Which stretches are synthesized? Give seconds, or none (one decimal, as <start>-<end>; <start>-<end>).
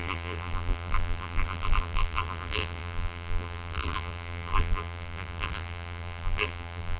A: 0.0-7.0